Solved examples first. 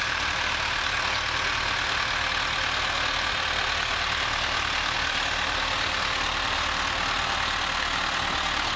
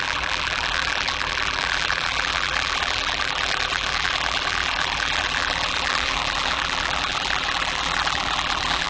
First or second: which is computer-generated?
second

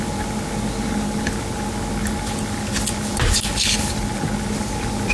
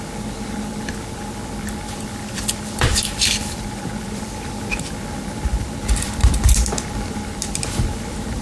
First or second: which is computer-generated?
second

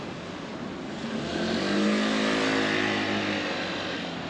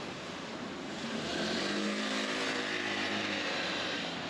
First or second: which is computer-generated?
second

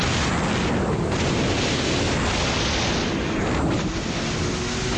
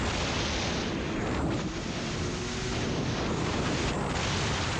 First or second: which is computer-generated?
second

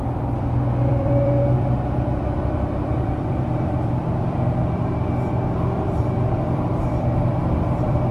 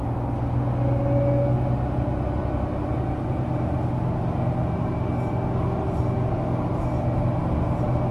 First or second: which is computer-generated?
first